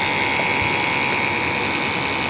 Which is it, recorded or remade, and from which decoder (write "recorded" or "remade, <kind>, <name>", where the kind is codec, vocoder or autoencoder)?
recorded